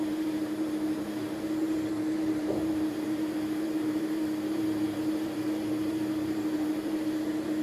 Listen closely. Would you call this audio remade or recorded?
remade